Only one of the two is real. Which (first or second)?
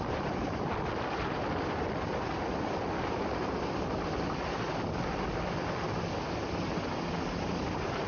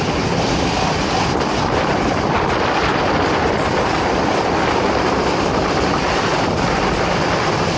first